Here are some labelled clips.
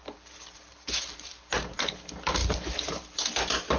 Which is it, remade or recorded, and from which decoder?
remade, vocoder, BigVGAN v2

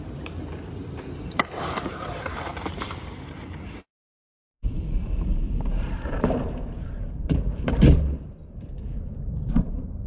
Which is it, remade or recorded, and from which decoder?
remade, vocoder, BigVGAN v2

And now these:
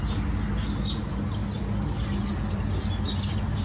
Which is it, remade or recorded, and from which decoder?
recorded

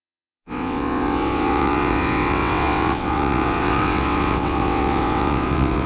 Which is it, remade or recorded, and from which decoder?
remade, vocoder, WaveNeXt